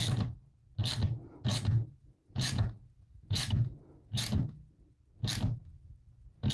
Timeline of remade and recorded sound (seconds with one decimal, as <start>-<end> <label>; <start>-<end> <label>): 0.0-1.5 recorded; 1.5-4.7 remade; 4.7-6.5 recorded